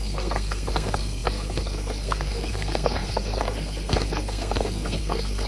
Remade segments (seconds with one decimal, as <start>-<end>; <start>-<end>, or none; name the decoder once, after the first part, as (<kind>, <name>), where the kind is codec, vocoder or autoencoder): 0.0-5.5 (codec, SNAC)